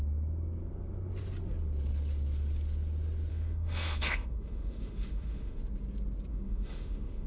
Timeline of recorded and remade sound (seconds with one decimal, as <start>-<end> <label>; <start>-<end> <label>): 0.0-3.3 recorded; 3.3-5.6 remade; 5.6-6.3 recorded; 6.3-7.3 remade